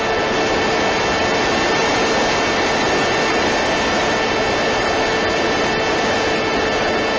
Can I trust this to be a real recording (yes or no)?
yes